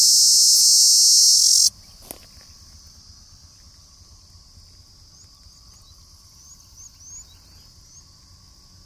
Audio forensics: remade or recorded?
recorded